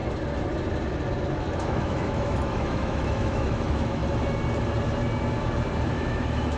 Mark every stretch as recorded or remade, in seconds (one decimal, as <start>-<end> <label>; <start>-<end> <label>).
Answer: 0.0-1.4 recorded; 1.4-4.0 remade; 4.0-5.9 recorded; 5.9-6.6 remade